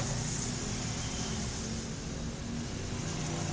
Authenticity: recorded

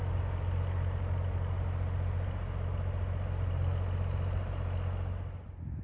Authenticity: recorded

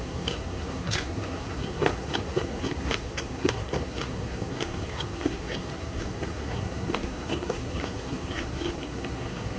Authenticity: remade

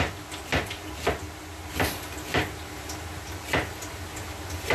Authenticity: recorded